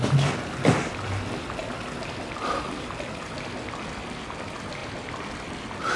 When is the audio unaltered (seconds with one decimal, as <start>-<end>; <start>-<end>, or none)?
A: 0.0-6.0